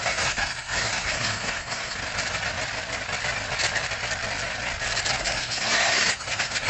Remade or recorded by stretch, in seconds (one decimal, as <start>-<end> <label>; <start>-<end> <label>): 0.0-2.0 remade; 2.0-5.2 recorded; 5.2-6.7 remade